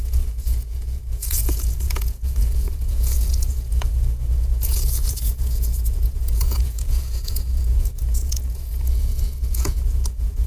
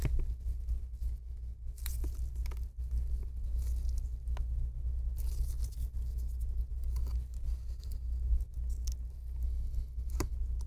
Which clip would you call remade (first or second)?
first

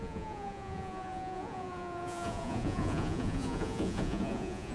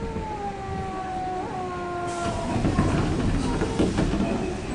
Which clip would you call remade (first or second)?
first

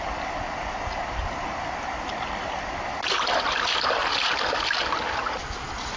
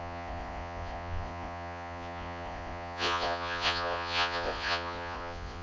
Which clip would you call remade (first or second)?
second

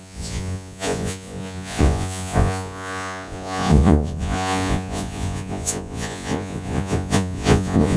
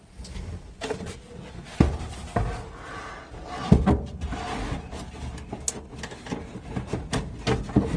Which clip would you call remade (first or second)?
first